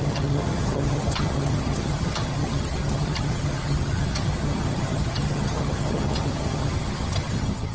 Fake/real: fake